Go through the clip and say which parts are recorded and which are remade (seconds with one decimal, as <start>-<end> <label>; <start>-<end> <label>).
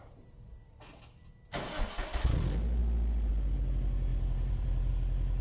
0.0-4.1 recorded; 4.1-4.9 remade; 4.9-5.4 recorded